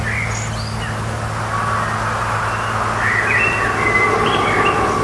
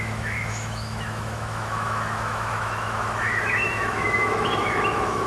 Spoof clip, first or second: second